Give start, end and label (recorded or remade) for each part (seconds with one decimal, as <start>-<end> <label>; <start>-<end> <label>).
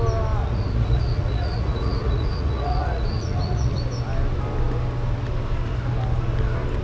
0.0-0.4 recorded; 0.4-3.8 remade; 3.8-6.8 recorded